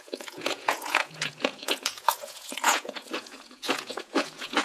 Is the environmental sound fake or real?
fake